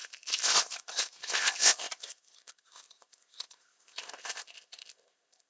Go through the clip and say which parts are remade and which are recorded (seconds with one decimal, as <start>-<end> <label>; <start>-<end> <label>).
0.0-5.5 remade